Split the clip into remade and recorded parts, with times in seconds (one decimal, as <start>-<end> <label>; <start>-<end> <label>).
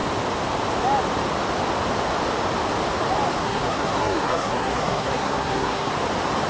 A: 0.0-3.4 recorded; 3.4-5.9 remade; 5.9-6.5 recorded